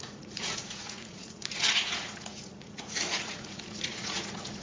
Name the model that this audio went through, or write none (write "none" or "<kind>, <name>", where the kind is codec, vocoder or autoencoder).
vocoder, Vocos